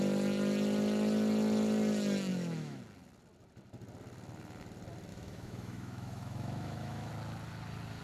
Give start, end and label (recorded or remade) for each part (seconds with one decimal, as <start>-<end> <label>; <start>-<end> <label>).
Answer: 0.0-2.3 recorded; 2.3-2.8 remade; 2.8-5.1 recorded; 5.1-7.1 remade; 7.1-8.0 recorded